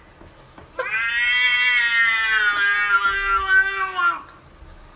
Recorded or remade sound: recorded